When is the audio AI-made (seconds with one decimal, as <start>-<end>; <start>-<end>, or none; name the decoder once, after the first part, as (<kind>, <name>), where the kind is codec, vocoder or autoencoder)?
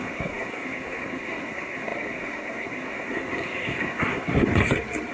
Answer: 0.0-4.5 (codec, SNAC)